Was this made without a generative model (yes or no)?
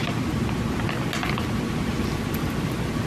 yes